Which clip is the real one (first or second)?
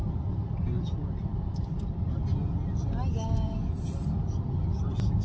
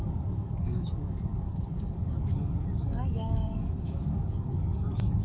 first